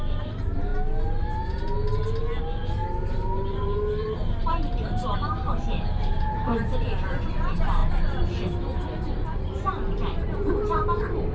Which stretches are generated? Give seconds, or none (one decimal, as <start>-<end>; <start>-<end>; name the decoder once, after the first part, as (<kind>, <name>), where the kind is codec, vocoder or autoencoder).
0.0-0.7 (vocoder, BigVGAN v2); 3.1-11.3